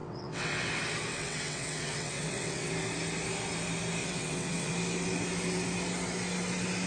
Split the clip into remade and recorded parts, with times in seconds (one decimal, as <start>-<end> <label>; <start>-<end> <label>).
0.0-0.7 remade; 0.7-1.1 recorded; 1.1-2.7 remade; 2.7-4.0 recorded; 4.0-4.7 remade; 4.7-6.9 recorded